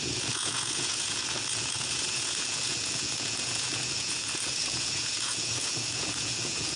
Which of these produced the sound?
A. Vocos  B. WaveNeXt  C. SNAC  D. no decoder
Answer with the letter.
A